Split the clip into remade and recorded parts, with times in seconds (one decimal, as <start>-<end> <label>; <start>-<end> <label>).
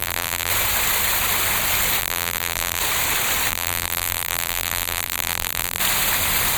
0.0-0.5 remade; 0.5-2.0 recorded; 2.0-2.8 remade; 2.8-3.5 recorded; 3.5-5.8 remade; 5.8-6.6 recorded